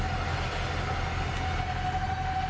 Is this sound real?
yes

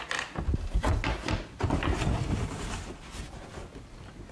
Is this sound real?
yes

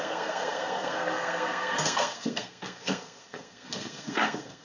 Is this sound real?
no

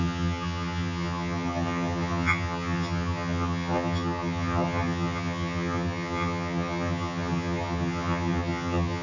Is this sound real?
no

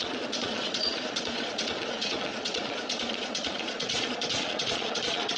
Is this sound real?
no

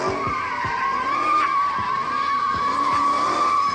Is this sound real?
yes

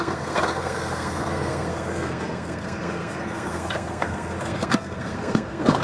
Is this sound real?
no